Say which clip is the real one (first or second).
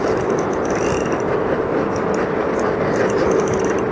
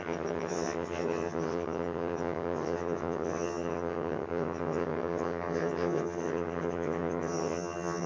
first